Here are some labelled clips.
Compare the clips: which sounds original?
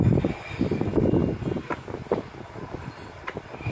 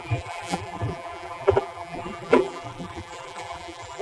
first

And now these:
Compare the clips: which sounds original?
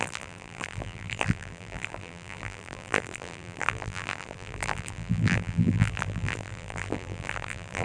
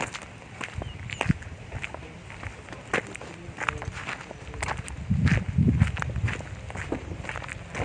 second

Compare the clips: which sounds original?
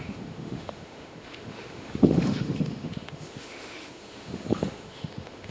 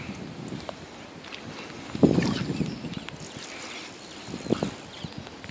second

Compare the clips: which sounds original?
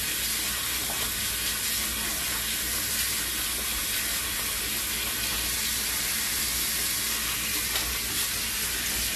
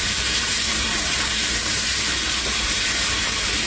first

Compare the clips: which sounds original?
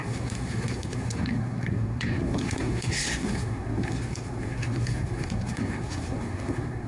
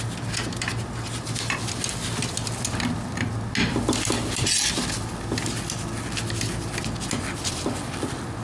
second